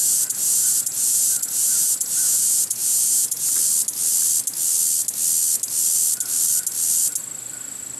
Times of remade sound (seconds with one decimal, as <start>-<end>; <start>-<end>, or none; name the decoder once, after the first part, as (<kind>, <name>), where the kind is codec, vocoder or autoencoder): 0.0-3.5 (vocoder, Vocos)